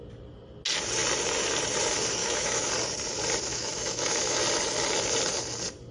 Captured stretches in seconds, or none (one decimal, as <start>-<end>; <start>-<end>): 0.0-2.2; 2.7-3.5; 4.4-5.9